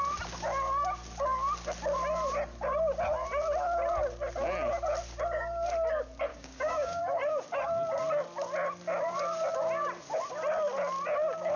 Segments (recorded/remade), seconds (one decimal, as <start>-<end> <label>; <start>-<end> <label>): 0.0-6.3 recorded; 6.3-7.0 remade; 7.0-11.6 recorded